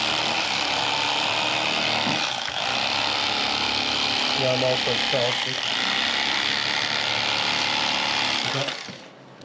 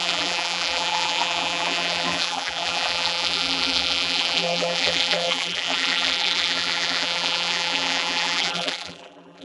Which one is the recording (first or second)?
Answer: first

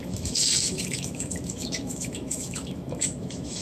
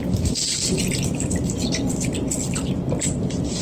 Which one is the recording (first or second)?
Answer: second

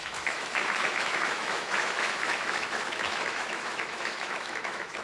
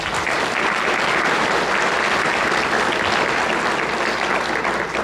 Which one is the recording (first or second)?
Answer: second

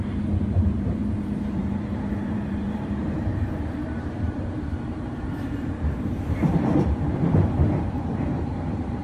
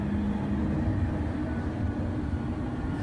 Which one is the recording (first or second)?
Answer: second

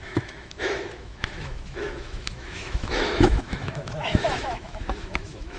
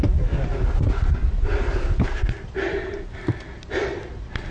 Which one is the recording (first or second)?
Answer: second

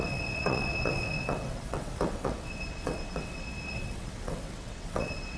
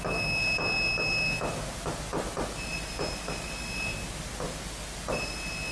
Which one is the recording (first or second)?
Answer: second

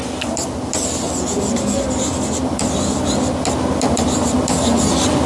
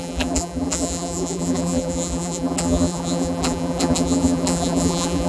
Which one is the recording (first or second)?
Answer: first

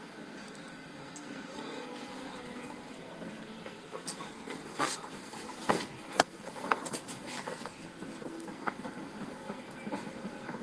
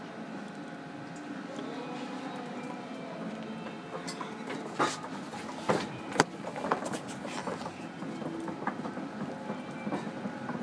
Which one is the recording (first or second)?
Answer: second